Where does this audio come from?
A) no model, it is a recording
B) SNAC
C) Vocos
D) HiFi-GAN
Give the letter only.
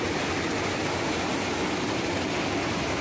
A